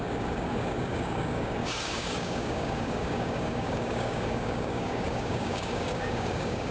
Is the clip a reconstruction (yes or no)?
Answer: yes